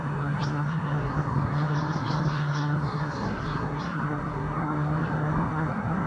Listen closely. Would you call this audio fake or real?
fake